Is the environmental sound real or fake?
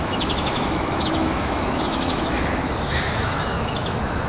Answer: fake